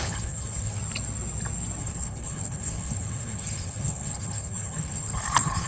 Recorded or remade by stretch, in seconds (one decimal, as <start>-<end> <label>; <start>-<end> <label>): 0.0-0.8 remade; 0.8-1.8 recorded; 1.8-5.7 remade